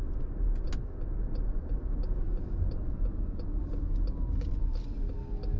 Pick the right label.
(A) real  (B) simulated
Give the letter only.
A